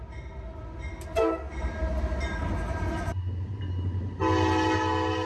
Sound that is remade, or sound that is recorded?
recorded